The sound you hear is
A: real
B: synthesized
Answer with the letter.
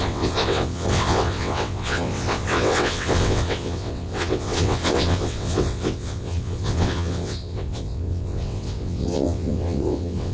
B